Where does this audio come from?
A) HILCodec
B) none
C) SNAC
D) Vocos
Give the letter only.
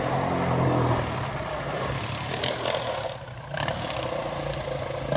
B